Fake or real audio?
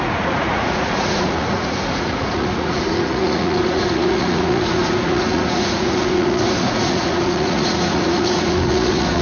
fake